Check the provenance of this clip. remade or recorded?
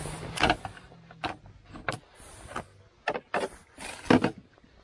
recorded